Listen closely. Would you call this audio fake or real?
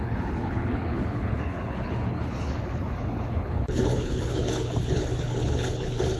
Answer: fake